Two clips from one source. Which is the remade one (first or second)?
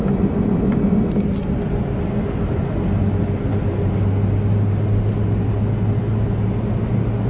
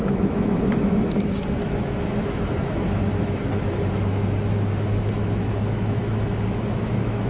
second